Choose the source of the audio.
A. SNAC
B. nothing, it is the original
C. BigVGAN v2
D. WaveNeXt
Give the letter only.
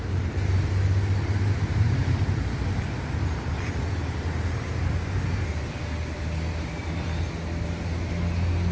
B